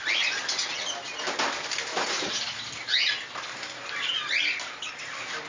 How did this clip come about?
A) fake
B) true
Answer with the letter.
B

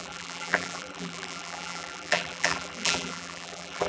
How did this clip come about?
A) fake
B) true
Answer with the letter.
A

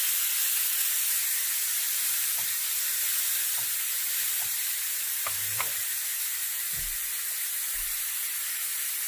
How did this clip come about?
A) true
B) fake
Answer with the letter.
A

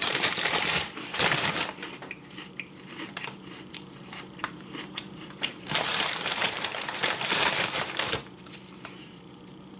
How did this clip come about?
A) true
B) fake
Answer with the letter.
B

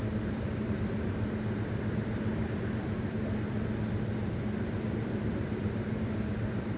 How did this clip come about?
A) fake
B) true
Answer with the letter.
A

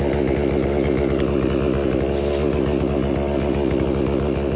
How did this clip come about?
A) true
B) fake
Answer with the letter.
A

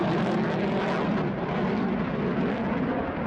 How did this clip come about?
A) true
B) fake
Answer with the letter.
A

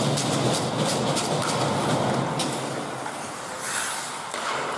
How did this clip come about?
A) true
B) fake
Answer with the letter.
A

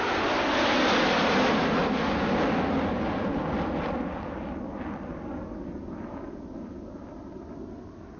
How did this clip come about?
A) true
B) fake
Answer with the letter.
A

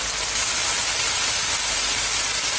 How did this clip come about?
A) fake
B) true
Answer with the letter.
B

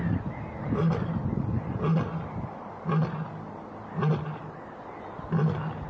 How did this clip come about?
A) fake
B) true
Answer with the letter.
B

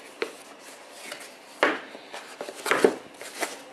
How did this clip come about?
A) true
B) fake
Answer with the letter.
A